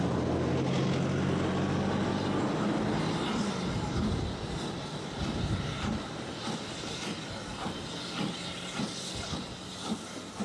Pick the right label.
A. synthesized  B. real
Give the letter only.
B